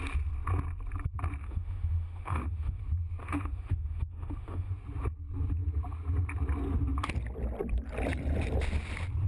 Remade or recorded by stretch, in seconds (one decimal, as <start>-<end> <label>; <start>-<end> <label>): 0.0-1.4 recorded; 1.4-2.8 remade; 2.8-3.2 recorded; 3.2-4.7 remade; 4.7-9.3 recorded